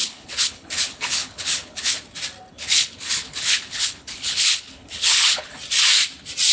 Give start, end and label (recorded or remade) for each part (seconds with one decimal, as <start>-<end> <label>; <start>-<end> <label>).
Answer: 0.0-2.0 remade; 2.0-2.5 recorded; 2.5-5.5 remade; 5.5-6.5 recorded